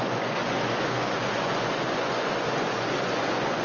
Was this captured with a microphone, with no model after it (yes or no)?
no